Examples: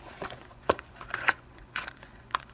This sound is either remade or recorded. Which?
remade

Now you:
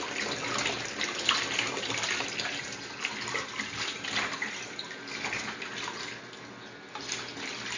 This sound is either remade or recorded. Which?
recorded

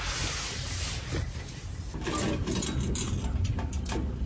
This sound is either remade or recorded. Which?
recorded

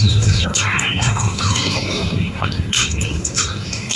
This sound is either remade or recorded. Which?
remade